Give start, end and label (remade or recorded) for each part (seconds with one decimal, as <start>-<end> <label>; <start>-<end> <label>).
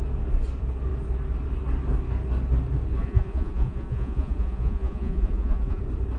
0.0-3.0 recorded; 3.0-5.8 remade; 5.8-6.2 recorded